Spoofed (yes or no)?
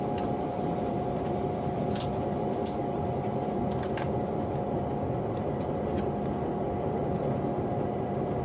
yes